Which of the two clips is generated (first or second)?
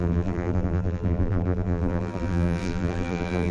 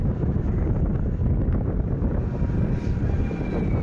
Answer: first